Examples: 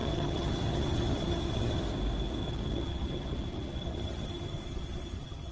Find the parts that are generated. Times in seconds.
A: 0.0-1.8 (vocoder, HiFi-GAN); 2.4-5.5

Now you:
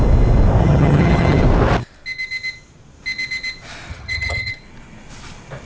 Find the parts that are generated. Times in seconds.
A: 0.6-1.4 (vocoder, HiFi-GAN); 3.9-4.5

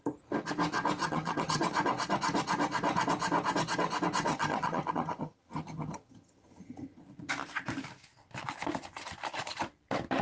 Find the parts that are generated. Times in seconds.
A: 1.0-1.6 (vocoder, HiFi-GAN); 4.3-7.0

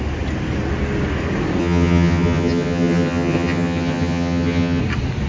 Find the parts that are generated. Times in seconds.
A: 1.6-4.8 (vocoder, HiFi-GAN)

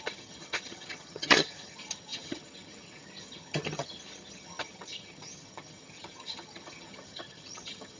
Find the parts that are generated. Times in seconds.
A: 0.0-8.0 (vocoder, HiFi-GAN)

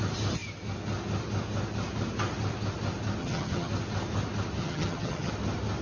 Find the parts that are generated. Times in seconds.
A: 3.2-3.7 (vocoder, HiFi-GAN); 4.6-5.3